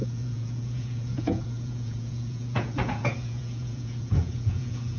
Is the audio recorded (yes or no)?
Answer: no